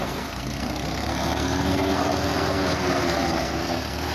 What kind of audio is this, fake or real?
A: fake